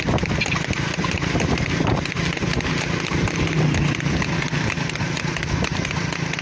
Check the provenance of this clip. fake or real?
real